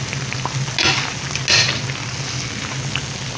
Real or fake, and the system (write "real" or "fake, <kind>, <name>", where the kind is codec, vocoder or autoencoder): real